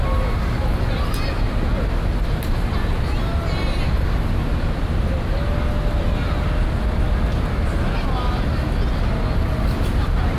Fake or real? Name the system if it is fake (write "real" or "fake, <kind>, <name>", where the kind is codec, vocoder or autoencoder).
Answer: real